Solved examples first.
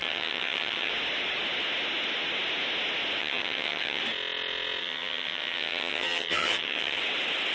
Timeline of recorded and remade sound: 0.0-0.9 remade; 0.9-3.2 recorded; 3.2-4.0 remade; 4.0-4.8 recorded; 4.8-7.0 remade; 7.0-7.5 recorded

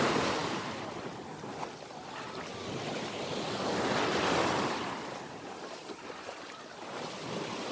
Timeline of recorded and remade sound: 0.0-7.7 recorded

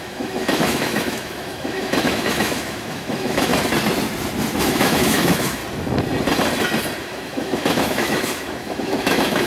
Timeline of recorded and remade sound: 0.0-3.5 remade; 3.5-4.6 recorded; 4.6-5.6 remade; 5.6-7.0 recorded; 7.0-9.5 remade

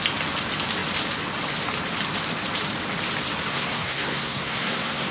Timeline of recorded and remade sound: 0.0-3.5 recorded; 3.5-5.1 remade

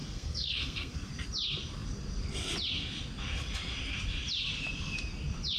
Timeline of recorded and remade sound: 0.0-1.1 remade; 1.1-5.6 recorded